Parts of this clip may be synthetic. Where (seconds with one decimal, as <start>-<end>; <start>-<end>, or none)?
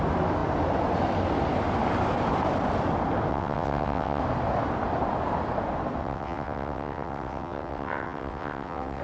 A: 3.3-4.2; 6.0-9.0